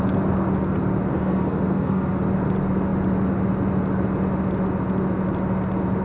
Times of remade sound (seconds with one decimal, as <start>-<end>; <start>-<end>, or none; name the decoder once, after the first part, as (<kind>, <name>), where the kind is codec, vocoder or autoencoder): 1.1-2.1 (codec, SNAC)